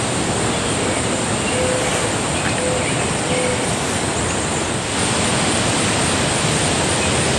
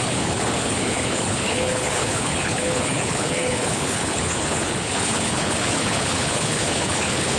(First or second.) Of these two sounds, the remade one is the second